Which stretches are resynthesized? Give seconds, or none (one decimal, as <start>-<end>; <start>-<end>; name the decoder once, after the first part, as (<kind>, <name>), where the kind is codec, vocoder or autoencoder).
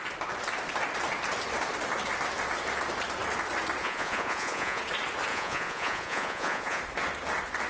3.8-4.8 (vocoder, Vocos); 5.3-6.8